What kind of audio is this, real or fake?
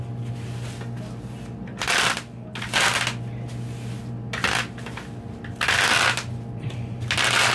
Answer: real